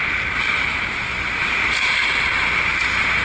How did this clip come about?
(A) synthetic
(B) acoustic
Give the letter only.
A